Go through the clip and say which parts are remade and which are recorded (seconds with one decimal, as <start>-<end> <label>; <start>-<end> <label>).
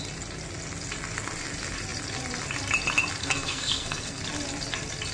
0.0-3.2 recorded; 3.2-4.2 remade; 4.2-5.1 recorded